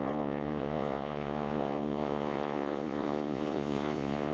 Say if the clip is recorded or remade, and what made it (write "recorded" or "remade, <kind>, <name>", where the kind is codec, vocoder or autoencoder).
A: remade, vocoder, Vocos